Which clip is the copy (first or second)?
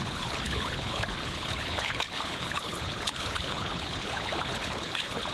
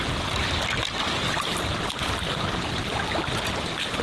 first